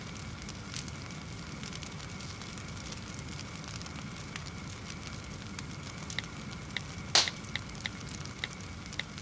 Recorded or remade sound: recorded